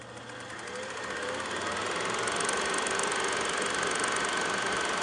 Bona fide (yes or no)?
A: yes